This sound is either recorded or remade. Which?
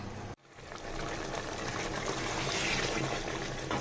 recorded